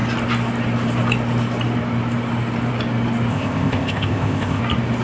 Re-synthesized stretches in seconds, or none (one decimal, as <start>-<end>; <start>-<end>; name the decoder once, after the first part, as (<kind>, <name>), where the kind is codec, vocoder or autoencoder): 3.3-4.6 (codec, ZipCodec)